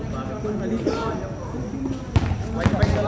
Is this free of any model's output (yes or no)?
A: yes